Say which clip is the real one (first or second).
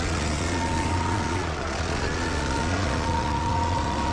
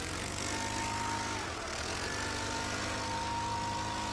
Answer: second